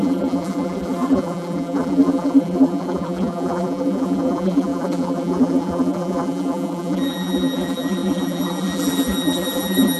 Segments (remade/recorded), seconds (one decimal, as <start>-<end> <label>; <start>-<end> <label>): 0.0-10.0 remade